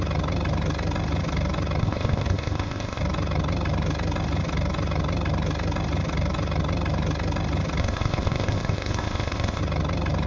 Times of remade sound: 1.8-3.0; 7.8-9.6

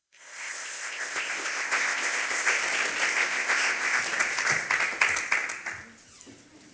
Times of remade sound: 0.0-2.6; 3.1-4.0

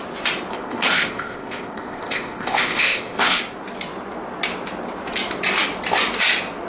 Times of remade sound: 0.5-3.4

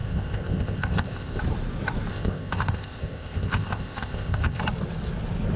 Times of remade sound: 0.0-1.4; 2.1-4.6

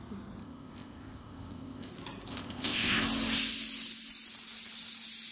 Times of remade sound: 0.4-1.9; 2.3-3.0

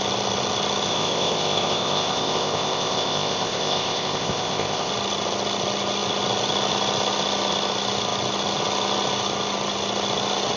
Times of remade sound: 0.9-4.9

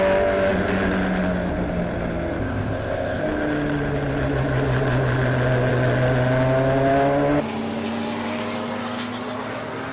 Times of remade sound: 2.4-3.2

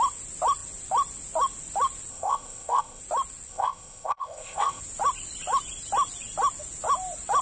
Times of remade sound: 2.1-3.0; 3.5-4.8